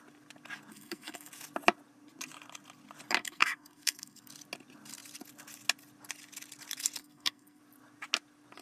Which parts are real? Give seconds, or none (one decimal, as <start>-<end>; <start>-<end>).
0.0-0.7; 1.3-3.2; 4.3-7.0; 7.6-8.6